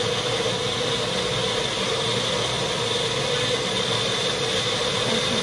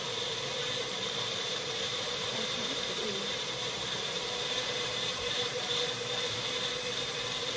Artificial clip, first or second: second